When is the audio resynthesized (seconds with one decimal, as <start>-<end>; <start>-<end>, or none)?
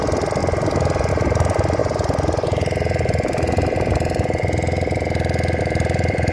0.0-0.4; 1.1-1.8; 5.6-6.3